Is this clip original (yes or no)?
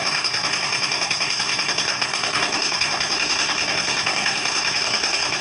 no